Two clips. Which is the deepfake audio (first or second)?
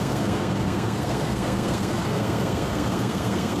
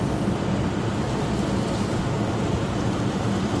first